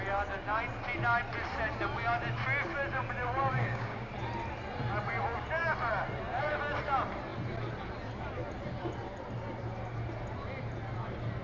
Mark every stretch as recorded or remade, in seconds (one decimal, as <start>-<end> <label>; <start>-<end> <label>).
0.0-3.5 recorded; 3.5-4.1 remade; 4.1-11.4 recorded

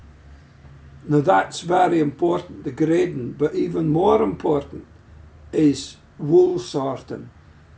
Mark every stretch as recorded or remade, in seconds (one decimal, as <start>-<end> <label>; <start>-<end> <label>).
0.0-6.5 recorded; 6.5-7.3 remade; 7.3-7.8 recorded

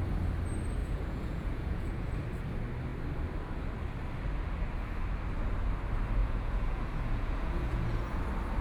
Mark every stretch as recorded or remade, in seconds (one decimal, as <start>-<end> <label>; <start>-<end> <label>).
0.0-0.8 recorded; 0.8-2.1 remade; 2.1-6.2 recorded; 6.2-8.2 remade; 8.2-8.6 recorded

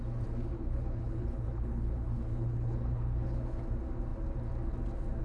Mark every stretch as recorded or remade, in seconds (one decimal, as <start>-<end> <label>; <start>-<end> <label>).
0.0-0.5 recorded; 0.5-3.6 remade; 3.6-5.2 recorded

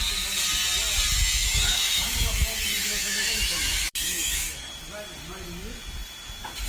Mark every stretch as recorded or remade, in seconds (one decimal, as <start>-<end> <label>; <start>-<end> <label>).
0.0-1.4 recorded; 1.4-4.7 remade; 4.7-6.7 recorded

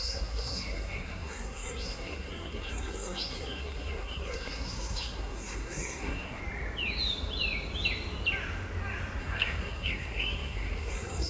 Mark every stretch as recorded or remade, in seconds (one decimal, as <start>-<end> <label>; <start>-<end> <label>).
0.0-6.4 remade; 6.4-9.2 recorded; 9.2-11.3 remade